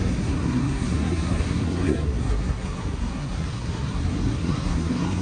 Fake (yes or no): yes